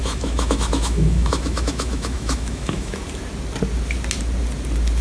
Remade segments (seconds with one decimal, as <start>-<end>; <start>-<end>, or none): 0.0-3.0